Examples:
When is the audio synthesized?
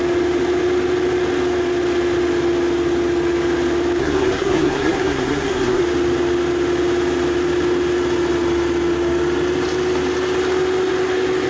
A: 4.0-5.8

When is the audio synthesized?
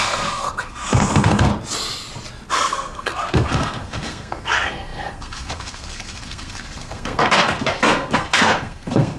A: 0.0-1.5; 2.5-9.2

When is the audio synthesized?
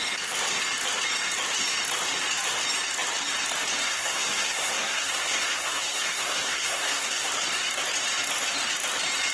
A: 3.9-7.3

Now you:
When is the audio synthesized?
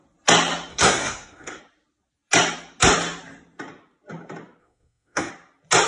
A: 0.7-1.6; 4.6-5.3